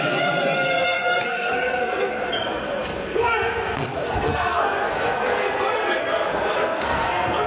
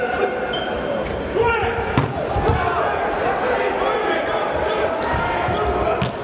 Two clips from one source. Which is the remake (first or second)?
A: first